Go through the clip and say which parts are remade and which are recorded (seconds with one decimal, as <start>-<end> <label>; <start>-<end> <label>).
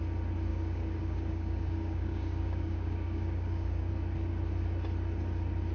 0.0-0.5 recorded; 0.5-3.9 remade; 3.9-5.7 recorded